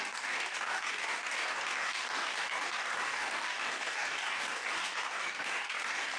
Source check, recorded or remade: remade